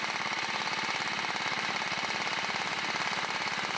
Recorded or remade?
remade